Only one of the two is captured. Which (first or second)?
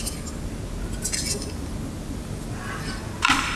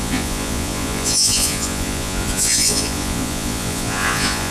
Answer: first